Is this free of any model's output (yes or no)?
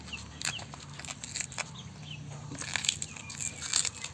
yes